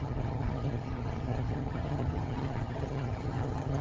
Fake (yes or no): yes